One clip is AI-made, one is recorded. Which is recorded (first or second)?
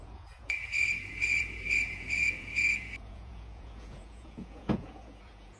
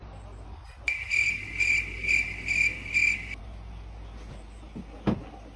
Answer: second